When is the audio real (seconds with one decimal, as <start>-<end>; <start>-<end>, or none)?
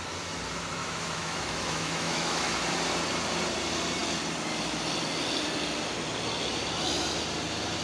0.0-0.8; 2.6-7.8